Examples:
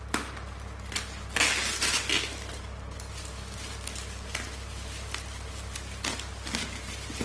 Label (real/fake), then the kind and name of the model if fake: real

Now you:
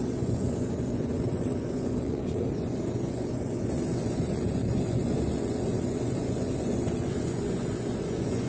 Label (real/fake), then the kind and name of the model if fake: fake, vocoder, Vocos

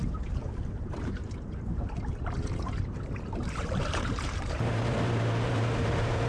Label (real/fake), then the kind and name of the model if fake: fake, vocoder, BigVGAN v2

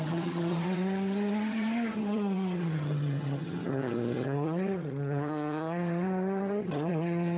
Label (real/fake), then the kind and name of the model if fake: fake, vocoder, HiFi-GAN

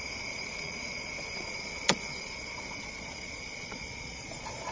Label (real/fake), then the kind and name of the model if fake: fake, vocoder, Vocos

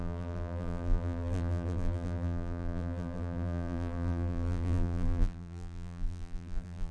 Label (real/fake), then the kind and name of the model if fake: fake, vocoder, BigVGAN v2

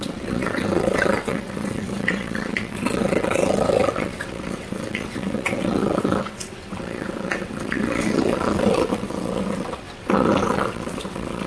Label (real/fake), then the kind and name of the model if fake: fake, vocoder, WaveNeXt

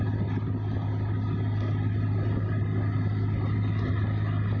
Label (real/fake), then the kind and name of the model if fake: real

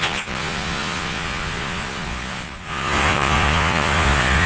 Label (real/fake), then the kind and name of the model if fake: fake, vocoder, Vocos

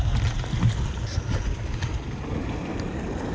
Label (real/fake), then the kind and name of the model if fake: real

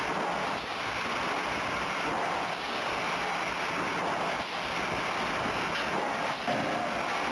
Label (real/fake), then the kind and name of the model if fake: real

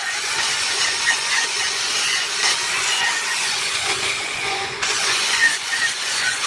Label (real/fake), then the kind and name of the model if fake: fake, vocoder, Vocos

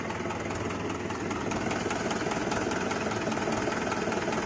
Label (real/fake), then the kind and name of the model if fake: real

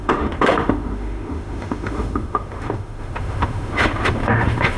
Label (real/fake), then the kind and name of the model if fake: fake, autoencoder, DAC-VAE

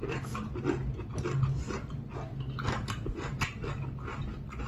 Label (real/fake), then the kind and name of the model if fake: real